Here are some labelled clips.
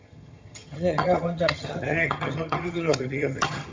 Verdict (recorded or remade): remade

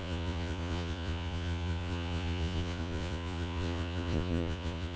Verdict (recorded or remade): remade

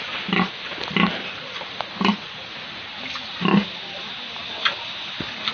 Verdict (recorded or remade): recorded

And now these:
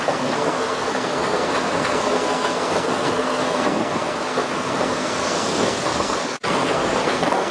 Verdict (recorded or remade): remade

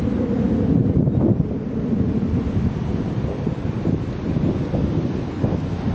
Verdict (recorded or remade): remade